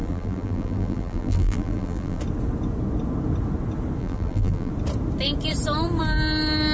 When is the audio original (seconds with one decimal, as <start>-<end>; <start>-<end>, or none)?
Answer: 2.2-4.0; 4.7-6.7